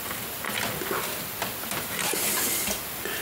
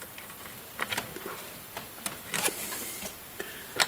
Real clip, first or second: first